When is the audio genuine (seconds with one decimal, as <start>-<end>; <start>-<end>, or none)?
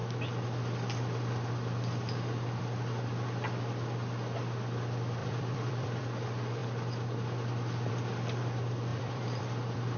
0.0-5.2; 6.0-8.9